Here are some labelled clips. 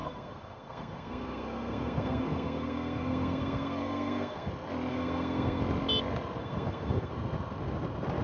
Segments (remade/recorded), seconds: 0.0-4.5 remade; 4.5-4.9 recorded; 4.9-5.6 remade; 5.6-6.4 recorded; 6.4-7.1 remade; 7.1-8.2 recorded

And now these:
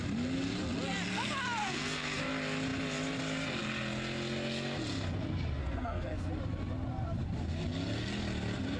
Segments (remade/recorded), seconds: 0.0-1.6 recorded; 1.6-2.2 remade; 2.2-5.6 recorded; 5.6-6.3 remade; 6.3-8.8 recorded

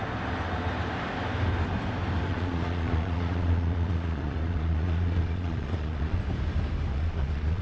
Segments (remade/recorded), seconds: 0.0-2.3 recorded; 2.3-6.2 remade; 6.2-6.9 recorded; 6.9-7.6 remade

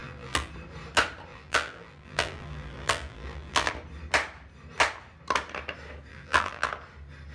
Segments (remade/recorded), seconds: 0.0-0.5 remade; 0.5-1.3 recorded; 1.3-3.7 remade; 3.7-6.1 recorded; 6.1-6.7 remade; 6.7-7.3 recorded

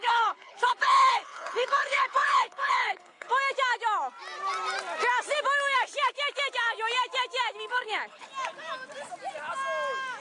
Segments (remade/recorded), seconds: 0.0-3.3 remade; 3.3-7.7 recorded; 7.7-8.3 remade; 8.3-10.2 recorded